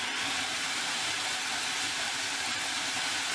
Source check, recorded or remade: recorded